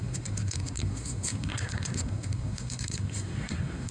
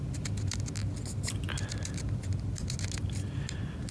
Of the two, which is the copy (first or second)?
first